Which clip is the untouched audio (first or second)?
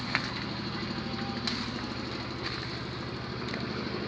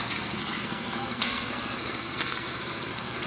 first